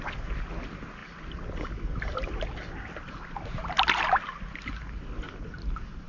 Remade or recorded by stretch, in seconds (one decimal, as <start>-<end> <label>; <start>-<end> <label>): 0.0-6.1 recorded